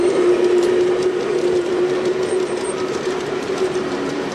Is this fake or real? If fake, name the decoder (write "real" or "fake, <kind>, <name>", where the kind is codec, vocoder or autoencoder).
fake, vocoder, BigVGAN v2